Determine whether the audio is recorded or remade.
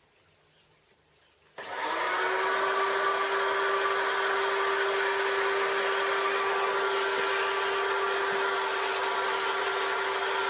recorded